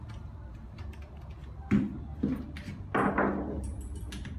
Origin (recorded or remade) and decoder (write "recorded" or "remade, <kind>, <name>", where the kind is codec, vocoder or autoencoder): recorded